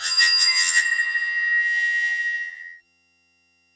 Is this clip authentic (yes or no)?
no